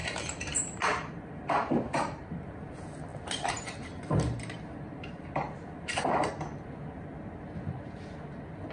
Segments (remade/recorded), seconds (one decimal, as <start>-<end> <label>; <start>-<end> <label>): 0.0-2.7 remade; 2.7-3.1 recorded; 3.1-6.3 remade; 6.3-8.7 recorded